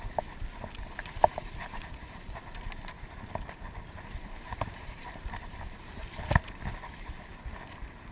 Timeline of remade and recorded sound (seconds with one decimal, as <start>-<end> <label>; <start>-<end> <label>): 0.0-1.3 recorded; 1.3-6.2 remade; 6.2-8.1 recorded